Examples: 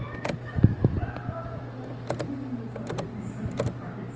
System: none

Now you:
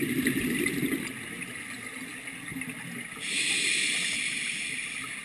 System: none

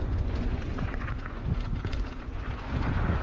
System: vocoder, Vocos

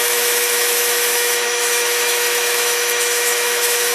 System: autoencoder, DAC-VAE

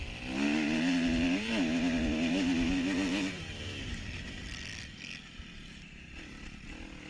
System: none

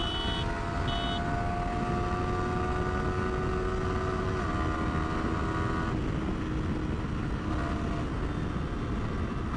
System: none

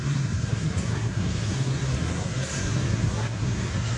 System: codec, SNAC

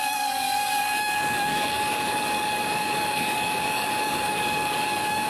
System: codec, DAC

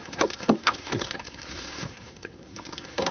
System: codec, SNAC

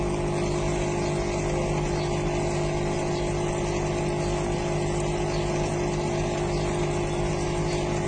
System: none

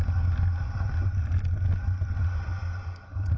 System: none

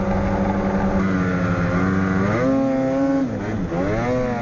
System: none